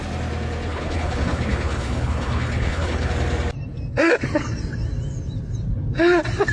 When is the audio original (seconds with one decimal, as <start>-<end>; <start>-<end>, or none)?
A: 0.0-0.7; 3.1-6.5